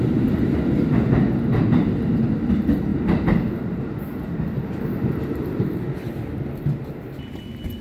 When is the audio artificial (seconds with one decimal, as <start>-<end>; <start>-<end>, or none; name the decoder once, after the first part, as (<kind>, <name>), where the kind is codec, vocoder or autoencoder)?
none